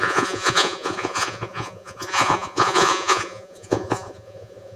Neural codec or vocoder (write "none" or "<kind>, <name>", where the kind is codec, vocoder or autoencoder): vocoder, Vocos